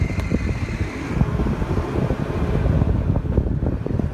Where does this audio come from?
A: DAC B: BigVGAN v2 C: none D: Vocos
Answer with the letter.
C